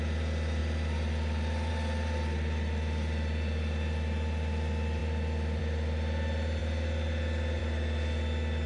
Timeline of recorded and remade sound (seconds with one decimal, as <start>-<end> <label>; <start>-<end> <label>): 0.0-8.7 recorded

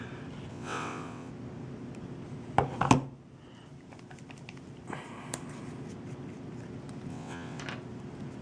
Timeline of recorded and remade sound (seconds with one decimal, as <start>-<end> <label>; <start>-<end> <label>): 0.0-0.5 recorded; 0.5-1.3 remade; 1.3-7.1 recorded; 7.1-7.6 remade; 7.6-8.4 recorded

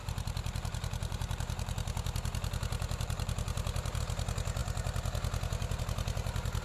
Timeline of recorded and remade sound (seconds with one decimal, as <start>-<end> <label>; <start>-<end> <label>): 0.0-4.0 remade; 4.0-6.6 recorded

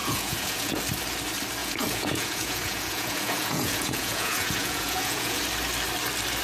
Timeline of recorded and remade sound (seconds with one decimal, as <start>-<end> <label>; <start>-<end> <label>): 0.0-0.8 remade; 0.8-1.6 recorded; 1.6-5.4 remade; 5.4-6.4 recorded

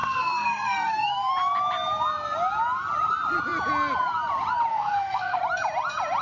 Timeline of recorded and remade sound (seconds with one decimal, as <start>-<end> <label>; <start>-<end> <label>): 0.0-1.3 remade; 1.3-4.7 recorded; 4.7-5.4 remade; 5.4-6.2 recorded

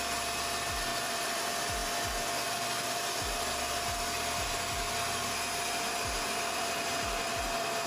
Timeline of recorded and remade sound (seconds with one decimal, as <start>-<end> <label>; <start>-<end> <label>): 0.0-0.9 recorded; 0.9-1.4 remade; 1.4-7.9 recorded

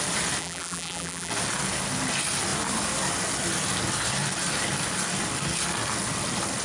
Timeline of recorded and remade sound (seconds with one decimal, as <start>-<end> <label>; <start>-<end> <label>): 0.0-0.4 recorded; 0.4-1.3 remade; 1.3-6.6 recorded